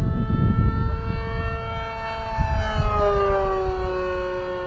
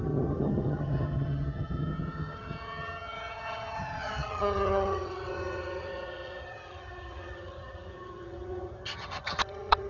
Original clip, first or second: first